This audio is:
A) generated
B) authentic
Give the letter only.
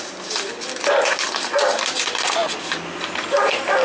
B